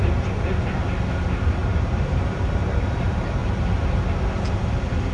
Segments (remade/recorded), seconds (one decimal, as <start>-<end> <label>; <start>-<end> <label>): 0.0-1.6 recorded; 1.6-2.7 remade; 2.7-5.1 recorded

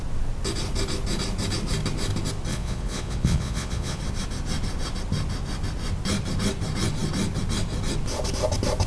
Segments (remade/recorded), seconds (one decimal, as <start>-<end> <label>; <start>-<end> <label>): 0.0-2.5 recorded; 2.5-4.0 remade; 4.0-8.9 recorded

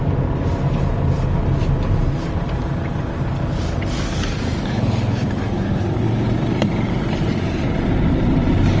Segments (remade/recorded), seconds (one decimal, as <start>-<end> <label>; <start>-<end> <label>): 0.0-8.8 recorded

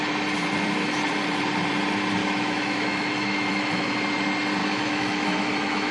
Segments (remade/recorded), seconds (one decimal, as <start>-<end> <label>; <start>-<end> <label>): 0.0-2.2 recorded; 2.2-3.9 remade; 3.9-4.6 recorded; 4.6-5.9 remade